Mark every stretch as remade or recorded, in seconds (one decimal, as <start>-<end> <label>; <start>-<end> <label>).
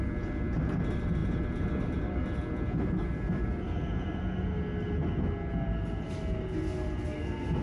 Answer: 0.0-7.6 recorded